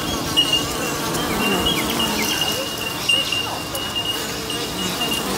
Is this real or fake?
real